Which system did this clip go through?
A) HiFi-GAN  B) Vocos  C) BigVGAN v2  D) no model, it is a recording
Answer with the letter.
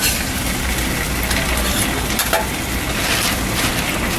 D